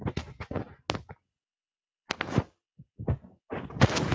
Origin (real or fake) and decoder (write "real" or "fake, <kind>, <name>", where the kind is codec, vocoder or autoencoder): real